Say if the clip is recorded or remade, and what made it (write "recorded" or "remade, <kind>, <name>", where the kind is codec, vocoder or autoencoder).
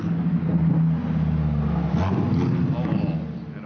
recorded